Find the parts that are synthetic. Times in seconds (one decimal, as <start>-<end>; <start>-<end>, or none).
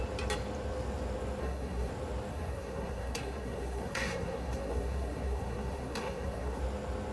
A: 1.4-1.9; 2.3-6.6